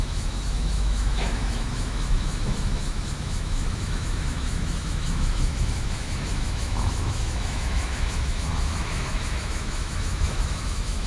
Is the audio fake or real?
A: fake